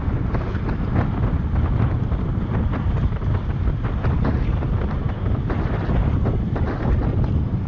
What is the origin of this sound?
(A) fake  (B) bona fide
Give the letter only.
B